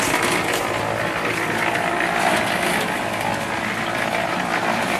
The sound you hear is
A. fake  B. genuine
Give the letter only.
B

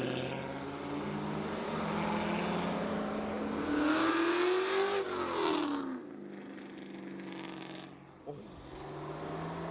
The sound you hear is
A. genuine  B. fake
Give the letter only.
A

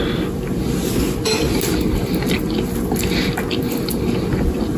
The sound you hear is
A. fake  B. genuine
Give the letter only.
B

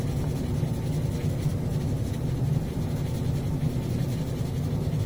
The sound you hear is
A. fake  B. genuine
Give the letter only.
B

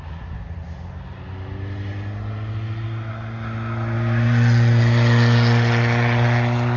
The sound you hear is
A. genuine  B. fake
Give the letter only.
A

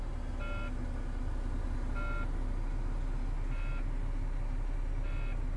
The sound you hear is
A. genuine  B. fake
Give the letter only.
A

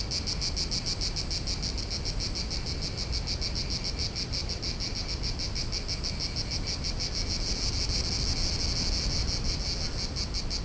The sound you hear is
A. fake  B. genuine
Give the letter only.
B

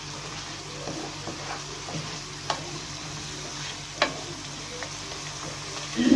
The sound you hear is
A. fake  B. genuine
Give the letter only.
B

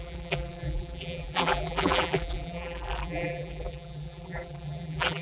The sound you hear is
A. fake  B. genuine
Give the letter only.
A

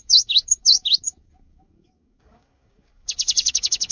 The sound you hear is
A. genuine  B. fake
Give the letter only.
B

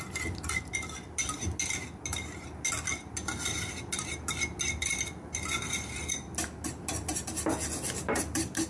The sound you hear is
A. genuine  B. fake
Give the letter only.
A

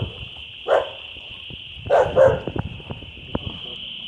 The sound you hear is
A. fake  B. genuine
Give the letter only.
A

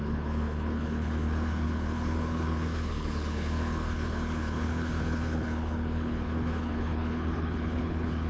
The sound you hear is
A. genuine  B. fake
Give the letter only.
B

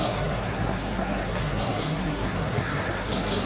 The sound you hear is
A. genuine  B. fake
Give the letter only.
B